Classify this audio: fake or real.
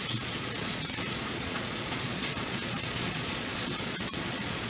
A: fake